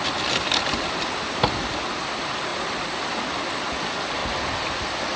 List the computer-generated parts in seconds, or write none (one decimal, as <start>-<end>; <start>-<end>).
none